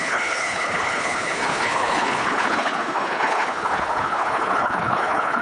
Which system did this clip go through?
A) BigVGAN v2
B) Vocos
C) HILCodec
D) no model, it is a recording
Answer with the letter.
C